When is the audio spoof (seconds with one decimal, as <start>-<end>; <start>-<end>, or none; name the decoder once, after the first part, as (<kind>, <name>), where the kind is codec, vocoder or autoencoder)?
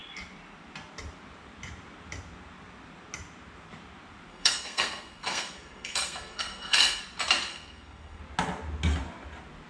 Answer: 4.3-7.0 (codec, SNAC); 7.5-8.2